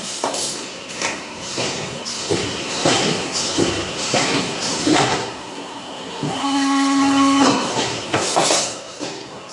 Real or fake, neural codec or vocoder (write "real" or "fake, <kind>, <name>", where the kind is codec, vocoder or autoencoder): fake, codec, SNAC